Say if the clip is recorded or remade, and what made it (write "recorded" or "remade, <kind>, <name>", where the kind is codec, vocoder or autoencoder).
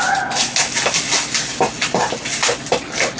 recorded